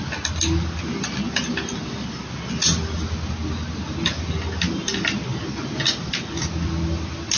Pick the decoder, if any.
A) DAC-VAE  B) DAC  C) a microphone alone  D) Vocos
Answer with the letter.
C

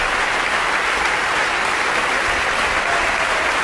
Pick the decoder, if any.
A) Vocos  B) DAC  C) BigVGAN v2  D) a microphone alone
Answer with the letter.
D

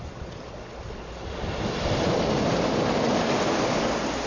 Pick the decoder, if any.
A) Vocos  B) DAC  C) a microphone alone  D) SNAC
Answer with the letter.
C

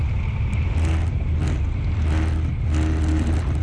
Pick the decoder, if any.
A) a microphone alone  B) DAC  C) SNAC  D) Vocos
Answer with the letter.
A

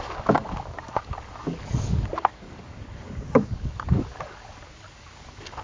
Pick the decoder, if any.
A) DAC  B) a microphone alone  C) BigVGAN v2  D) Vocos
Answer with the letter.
A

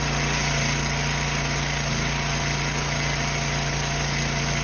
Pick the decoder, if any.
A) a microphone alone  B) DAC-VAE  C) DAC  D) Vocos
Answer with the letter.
A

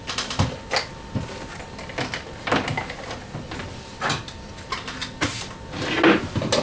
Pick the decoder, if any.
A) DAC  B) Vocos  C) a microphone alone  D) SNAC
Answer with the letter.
C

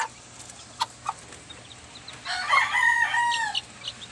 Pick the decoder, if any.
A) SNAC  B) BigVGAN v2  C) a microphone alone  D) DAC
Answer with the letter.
C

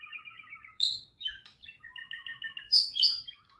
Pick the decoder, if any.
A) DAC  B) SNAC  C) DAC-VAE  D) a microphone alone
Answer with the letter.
A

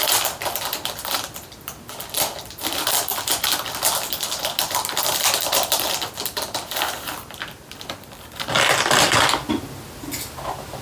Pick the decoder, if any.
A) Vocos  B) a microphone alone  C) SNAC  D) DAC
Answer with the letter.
B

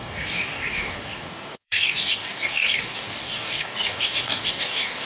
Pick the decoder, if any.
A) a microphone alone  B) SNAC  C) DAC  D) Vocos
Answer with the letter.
C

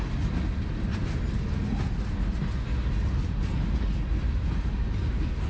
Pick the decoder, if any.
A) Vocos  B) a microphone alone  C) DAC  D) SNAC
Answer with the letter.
B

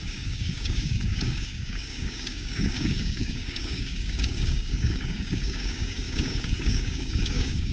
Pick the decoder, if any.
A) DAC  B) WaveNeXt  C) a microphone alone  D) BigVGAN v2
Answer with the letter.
A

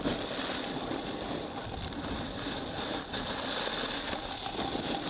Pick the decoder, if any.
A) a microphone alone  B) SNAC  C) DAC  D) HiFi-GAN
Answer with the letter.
A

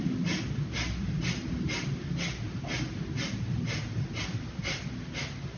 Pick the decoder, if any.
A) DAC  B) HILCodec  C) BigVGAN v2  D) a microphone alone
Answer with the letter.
D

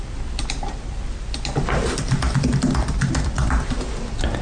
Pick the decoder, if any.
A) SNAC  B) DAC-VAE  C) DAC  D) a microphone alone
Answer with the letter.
D